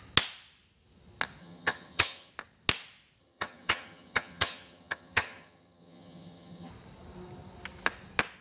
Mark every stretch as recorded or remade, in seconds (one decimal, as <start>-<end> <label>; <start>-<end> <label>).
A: 0.0-1.4 recorded; 1.4-2.3 remade; 2.3-3.2 recorded; 3.2-6.7 remade; 6.7-8.4 recorded

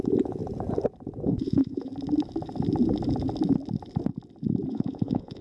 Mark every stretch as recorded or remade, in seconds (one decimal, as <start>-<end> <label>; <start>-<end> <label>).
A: 0.0-0.4 remade; 0.4-1.4 recorded; 1.4-1.9 remade; 1.9-4.7 recorded; 4.7-5.4 remade